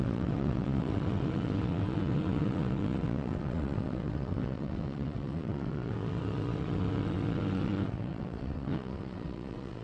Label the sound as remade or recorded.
remade